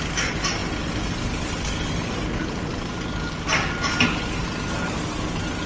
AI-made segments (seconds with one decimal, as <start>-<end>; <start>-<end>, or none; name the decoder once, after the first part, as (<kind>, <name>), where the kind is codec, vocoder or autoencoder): none